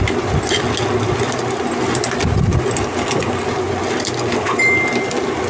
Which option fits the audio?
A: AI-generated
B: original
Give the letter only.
B